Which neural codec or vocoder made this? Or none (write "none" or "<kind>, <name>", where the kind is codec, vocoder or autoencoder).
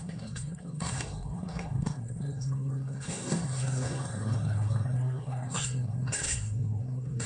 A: codec, SNAC